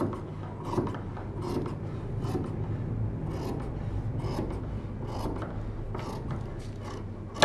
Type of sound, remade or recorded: recorded